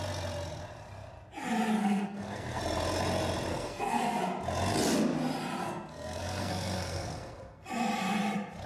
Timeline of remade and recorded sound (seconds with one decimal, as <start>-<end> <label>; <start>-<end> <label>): 0.0-1.8 recorded; 1.8-2.6 remade; 2.6-3.5 recorded; 3.5-4.2 remade; 4.2-5.6 recorded; 5.6-7.7 remade; 7.7-8.7 recorded